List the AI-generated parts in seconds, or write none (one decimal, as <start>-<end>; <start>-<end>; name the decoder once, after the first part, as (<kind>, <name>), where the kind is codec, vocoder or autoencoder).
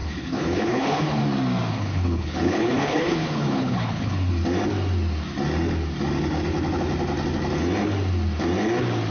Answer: 0.0-1.2 (codec, HILCodec); 1.7-4.3